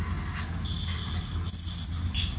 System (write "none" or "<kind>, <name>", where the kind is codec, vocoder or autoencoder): none